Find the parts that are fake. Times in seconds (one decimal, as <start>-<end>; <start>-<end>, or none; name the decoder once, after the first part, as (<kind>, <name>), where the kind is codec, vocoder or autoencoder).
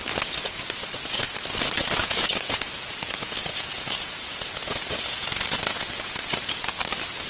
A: 2.0-6.3 (vocoder, Vocos)